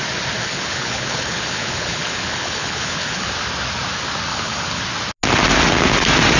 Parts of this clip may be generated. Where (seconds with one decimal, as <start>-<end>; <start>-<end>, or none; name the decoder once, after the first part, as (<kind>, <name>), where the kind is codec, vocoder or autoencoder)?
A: 0.4-3.3 (codec, HILCodec); 4.3-4.8